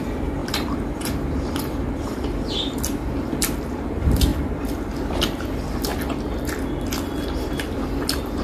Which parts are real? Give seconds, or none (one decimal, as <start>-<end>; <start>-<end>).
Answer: 4.3-5.1; 5.9-7.3